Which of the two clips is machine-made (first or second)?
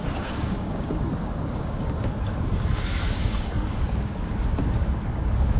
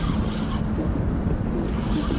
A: first